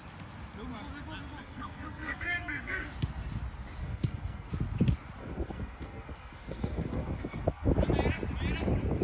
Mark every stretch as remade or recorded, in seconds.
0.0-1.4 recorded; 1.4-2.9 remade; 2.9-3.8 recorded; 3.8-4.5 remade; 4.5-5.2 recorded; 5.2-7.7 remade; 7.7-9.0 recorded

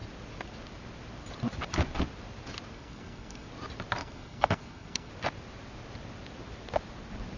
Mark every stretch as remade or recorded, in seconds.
0.0-2.7 recorded; 2.7-3.5 remade; 3.5-4.0 recorded; 4.0-5.1 remade; 5.1-7.4 recorded